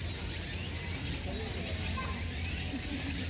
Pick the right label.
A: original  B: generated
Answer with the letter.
A